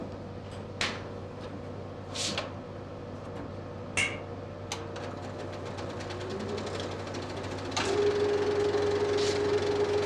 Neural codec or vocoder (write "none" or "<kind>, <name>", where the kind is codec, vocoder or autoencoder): none